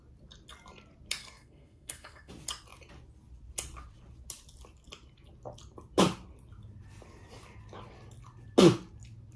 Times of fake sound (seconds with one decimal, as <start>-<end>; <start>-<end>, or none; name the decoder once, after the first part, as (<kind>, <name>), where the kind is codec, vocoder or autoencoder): 1.2-2.3 (codec, SNAC)